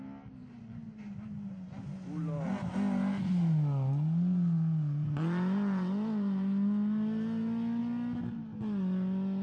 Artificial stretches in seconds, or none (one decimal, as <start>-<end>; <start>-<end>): none